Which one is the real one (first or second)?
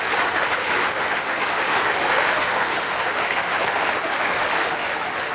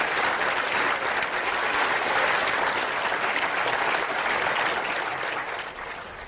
second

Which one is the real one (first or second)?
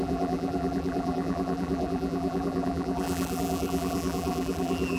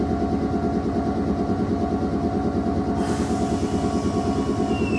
second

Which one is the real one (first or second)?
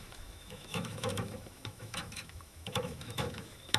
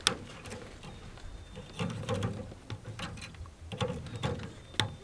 second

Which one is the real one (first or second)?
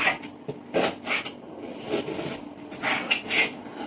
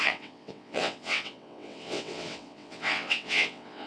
first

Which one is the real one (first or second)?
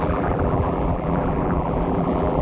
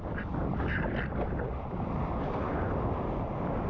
second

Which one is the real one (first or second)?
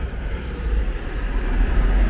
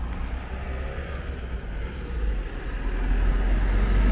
second